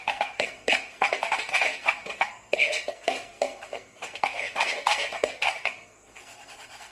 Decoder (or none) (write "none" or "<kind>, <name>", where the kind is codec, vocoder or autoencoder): codec, SNAC